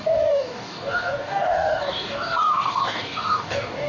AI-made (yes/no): yes